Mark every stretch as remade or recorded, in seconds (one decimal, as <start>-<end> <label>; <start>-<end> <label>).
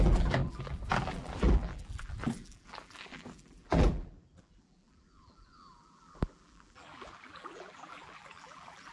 0.0-8.9 remade